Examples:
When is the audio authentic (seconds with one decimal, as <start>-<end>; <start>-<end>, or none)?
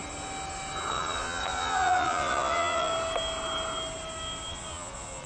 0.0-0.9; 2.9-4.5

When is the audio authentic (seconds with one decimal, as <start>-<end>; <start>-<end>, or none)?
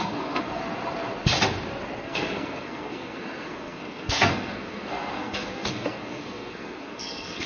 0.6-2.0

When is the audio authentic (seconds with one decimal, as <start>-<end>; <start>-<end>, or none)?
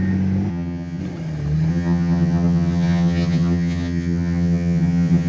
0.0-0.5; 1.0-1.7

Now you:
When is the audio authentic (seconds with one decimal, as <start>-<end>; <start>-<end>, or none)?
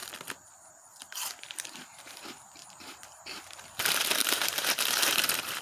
0.0-1.5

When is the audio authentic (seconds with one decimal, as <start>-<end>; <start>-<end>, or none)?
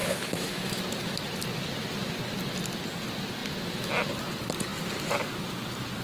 0.8-6.0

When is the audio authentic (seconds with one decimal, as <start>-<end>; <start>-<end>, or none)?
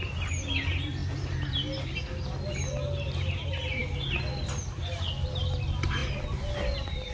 0.0-7.1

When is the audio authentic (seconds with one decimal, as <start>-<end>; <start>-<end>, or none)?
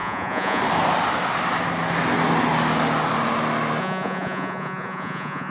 0.6-3.8